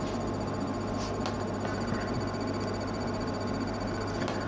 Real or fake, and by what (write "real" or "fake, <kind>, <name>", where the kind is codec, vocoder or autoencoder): real